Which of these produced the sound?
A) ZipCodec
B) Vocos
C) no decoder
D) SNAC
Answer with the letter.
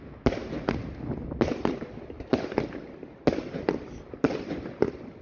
C